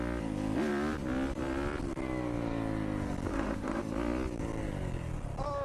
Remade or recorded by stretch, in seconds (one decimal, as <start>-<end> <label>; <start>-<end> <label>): 0.0-3.3 recorded; 3.3-3.8 remade; 3.8-5.6 recorded